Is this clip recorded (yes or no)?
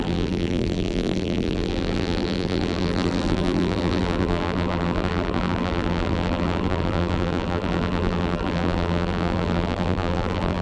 no